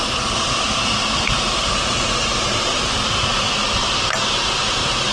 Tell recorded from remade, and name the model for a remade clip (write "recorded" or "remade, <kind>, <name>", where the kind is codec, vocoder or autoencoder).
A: remade, vocoder, BigVGAN v2